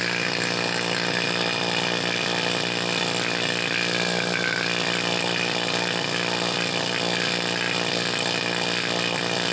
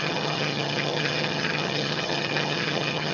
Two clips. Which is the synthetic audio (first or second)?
second